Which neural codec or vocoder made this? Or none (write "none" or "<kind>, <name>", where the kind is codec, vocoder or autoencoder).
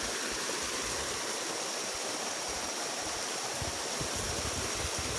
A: none